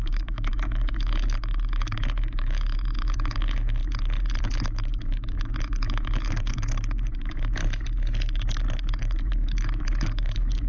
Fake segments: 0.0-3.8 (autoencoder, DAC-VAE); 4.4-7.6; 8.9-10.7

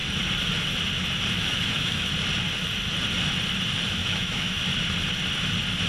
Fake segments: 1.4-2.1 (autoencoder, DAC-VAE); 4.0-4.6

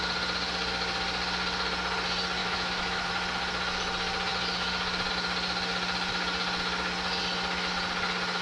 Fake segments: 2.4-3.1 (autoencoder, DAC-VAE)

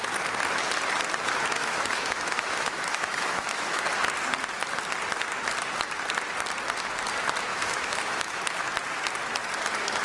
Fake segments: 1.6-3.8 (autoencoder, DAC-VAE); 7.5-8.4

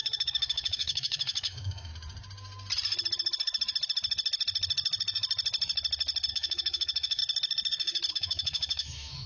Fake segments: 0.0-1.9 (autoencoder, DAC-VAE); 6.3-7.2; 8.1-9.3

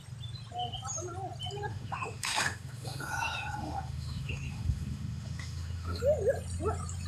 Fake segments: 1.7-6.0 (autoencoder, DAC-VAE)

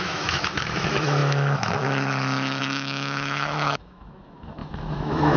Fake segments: 0.0-5.4 (autoencoder, DAC-VAE)

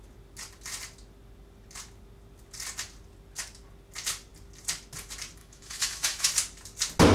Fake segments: 5.4-6.3 (autoencoder, DAC-VAE)